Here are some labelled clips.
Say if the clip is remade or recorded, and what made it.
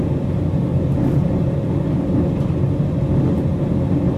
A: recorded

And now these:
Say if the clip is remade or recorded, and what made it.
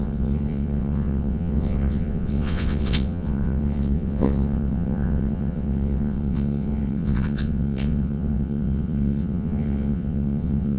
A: remade, vocoder, WaveNeXt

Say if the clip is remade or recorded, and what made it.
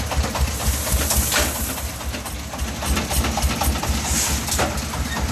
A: recorded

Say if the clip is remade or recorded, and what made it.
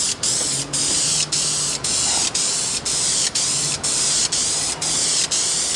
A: recorded